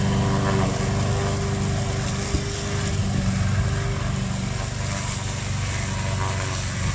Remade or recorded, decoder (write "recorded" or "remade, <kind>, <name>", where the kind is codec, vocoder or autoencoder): recorded